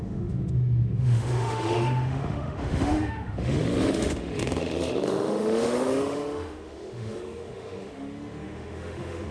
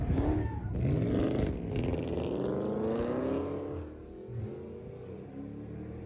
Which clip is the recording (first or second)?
second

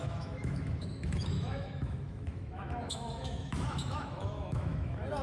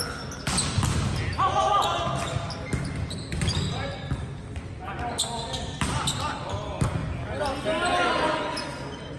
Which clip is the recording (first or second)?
second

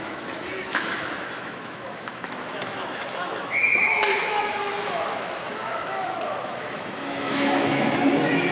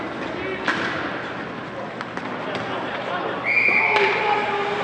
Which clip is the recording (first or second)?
second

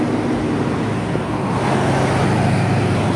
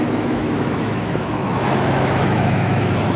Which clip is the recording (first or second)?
first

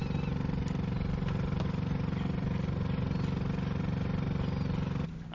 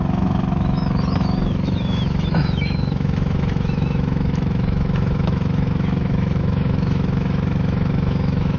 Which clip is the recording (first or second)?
first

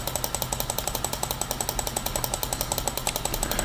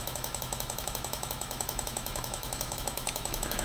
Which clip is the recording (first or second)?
first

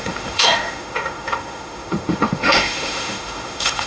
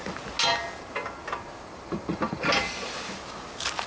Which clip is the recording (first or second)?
second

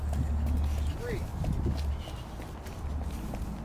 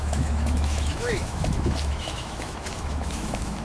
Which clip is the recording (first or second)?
first